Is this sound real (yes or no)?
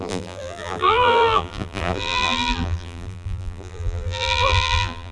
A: no